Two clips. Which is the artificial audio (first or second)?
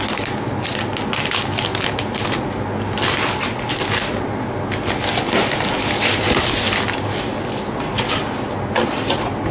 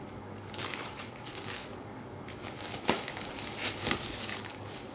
second